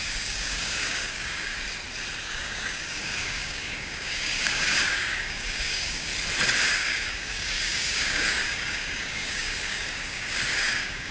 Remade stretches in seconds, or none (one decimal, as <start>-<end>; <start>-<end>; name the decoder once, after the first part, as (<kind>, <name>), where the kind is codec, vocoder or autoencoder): 0.0-1.5 (codec, DAC); 2.2-6.1; 6.7-11.1